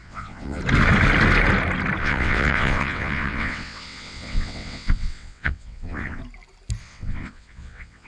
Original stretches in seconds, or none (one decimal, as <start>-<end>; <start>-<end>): 0.6-2.0; 6.2-6.8